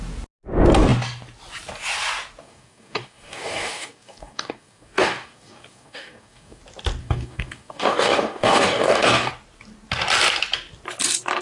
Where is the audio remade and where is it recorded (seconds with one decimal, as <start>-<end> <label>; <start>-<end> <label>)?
0.0-2.4 recorded; 2.4-6.6 remade; 6.6-7.0 recorded; 7.0-9.3 remade; 9.3-11.4 recorded